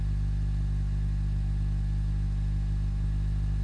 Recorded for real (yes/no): yes